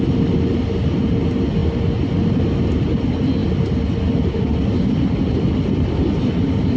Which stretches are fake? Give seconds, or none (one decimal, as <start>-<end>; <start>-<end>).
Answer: 1.6-2.3